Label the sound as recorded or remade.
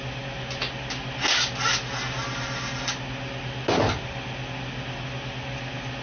recorded